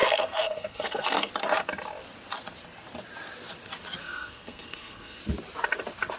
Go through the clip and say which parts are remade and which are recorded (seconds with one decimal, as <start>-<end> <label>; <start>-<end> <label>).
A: 0.0-1.3 remade; 1.3-4.0 recorded; 4.0-5.2 remade; 5.2-6.2 recorded